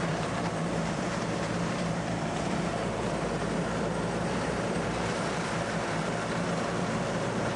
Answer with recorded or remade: remade